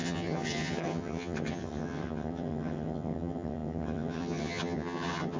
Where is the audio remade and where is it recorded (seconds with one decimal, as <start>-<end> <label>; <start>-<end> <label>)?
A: 0.0-5.4 remade